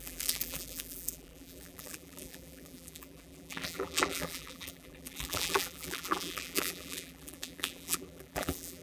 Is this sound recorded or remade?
remade